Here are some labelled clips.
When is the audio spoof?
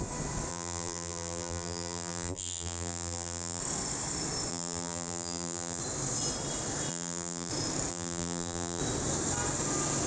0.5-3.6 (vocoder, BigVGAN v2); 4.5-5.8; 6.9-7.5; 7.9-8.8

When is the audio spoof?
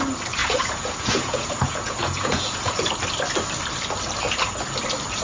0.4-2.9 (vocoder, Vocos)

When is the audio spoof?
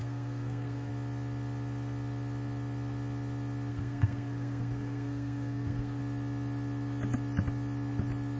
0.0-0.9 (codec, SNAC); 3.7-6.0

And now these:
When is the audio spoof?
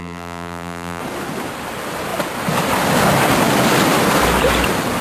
0.0-1.0 (vocoder, BigVGAN v2)